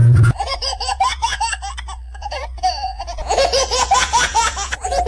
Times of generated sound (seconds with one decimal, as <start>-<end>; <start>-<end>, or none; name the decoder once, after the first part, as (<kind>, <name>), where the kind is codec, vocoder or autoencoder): 0.0-1.4 (vocoder, Vocos); 2.2-5.1